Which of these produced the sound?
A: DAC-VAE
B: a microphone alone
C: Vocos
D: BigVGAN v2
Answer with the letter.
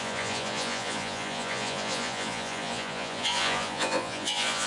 C